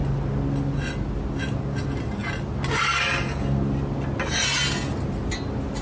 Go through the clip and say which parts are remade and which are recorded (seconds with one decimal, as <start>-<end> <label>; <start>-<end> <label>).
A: 0.0-5.8 recorded